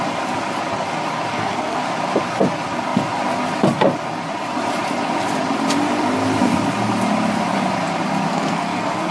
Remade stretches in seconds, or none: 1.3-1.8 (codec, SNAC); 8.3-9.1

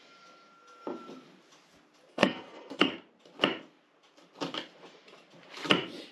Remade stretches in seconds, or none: 2.1-2.9 (codec, SNAC)

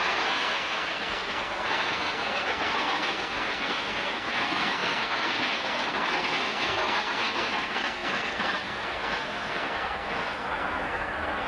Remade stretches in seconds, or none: 0.0-11.5 (codec, SNAC)

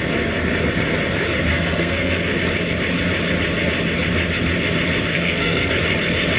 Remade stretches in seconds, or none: 1.5-2.4 (codec, SNAC); 5.1-5.7

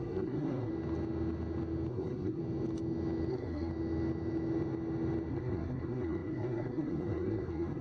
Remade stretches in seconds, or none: 0.0-0.7 (codec, SNAC); 1.9-2.4; 3.3-3.7; 5.3-7.8

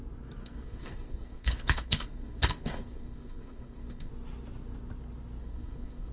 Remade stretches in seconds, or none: 0.4-4.1 (codec, SNAC); 5.4-6.1

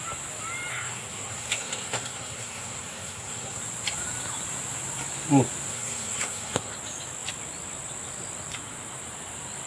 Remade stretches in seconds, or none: 0.7-3.6 (codec, SNAC); 5.7-6.7

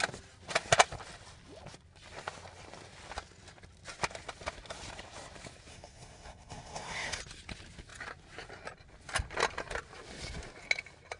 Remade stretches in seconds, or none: 5.7-7.2 (codec, SNAC)